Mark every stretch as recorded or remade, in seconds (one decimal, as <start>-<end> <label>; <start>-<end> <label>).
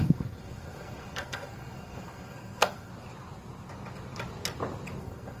0.0-2.9 remade; 2.9-5.0 recorded; 5.0-5.4 remade